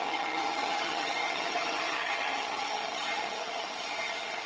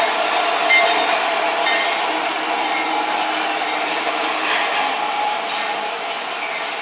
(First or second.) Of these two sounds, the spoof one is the first